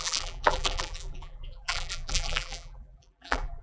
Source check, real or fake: fake